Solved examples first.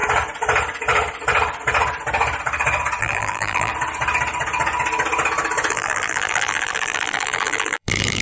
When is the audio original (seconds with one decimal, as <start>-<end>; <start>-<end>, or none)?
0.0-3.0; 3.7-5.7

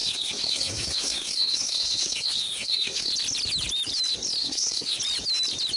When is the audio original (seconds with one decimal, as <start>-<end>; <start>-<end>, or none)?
3.1-4.4; 5.0-5.8

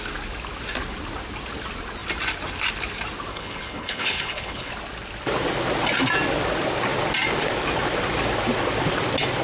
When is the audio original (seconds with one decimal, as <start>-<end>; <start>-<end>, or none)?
0.0-3.3; 4.7-9.4

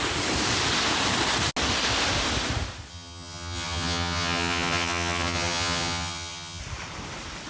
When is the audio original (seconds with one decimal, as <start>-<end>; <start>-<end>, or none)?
0.0-2.9; 6.6-7.5